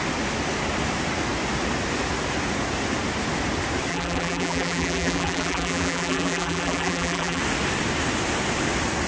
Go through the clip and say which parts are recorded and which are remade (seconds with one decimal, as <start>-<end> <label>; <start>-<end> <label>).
0.0-3.9 recorded; 3.9-7.4 remade; 7.4-9.1 recorded